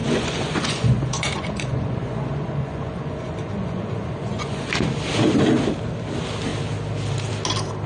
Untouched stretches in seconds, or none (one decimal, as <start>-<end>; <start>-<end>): 4.7-7.9